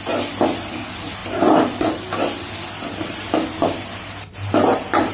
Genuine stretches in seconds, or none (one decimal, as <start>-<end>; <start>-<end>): 0.0-5.1